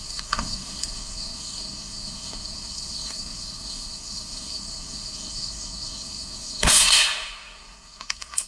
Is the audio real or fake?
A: fake